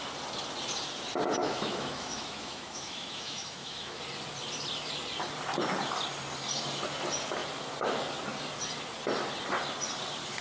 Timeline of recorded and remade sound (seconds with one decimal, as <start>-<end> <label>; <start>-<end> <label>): 0.0-1.4 recorded; 1.4-4.0 remade; 4.0-10.4 recorded